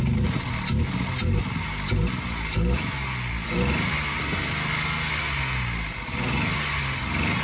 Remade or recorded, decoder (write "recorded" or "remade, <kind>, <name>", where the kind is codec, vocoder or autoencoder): recorded